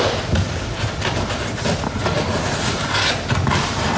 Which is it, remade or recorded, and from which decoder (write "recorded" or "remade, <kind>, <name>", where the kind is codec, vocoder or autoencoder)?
recorded